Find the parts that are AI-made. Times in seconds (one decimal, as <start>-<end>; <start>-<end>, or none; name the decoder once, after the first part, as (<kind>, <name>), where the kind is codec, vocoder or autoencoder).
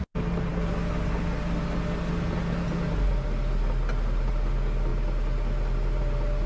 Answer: none